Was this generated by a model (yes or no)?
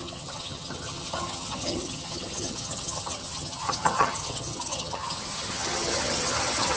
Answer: yes